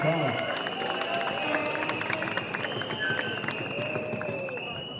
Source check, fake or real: real